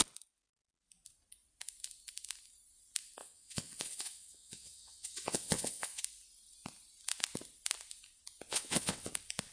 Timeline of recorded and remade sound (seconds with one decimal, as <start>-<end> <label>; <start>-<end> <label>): 0.0-3.2 recorded; 3.2-6.0 remade; 6.0-8.5 recorded; 8.5-9.1 remade; 9.1-9.5 recorded